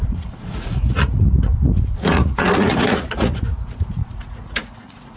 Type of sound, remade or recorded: remade